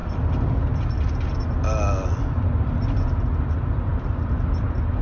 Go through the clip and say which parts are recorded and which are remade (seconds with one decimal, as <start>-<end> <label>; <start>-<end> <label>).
0.0-5.0 recorded